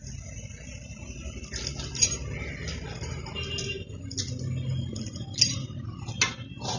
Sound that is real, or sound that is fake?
real